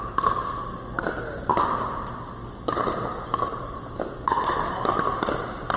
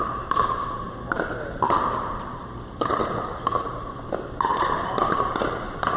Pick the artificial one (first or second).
second